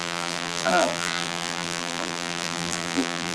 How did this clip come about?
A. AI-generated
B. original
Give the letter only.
A